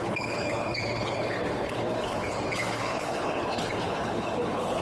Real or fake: fake